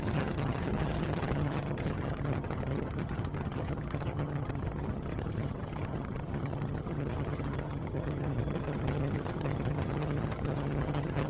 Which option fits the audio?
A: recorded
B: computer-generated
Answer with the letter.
B